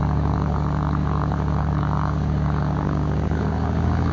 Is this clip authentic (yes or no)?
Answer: no